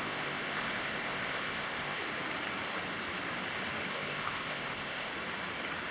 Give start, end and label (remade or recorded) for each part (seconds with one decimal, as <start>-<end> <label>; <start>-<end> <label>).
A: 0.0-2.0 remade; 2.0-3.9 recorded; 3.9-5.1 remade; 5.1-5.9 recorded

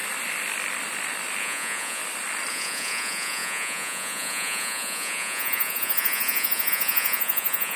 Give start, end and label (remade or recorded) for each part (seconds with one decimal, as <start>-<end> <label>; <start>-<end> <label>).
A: 0.0-1.4 recorded; 1.4-2.0 remade; 2.0-2.5 recorded; 2.5-7.8 remade

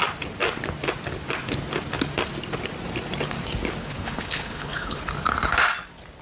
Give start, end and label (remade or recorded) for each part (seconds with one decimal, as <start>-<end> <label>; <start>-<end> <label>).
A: 0.0-3.8 recorded; 3.8-5.0 remade; 5.0-6.2 recorded

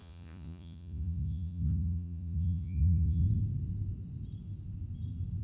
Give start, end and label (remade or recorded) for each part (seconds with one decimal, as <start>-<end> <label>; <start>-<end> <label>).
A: 0.0-3.2 remade; 3.2-5.4 recorded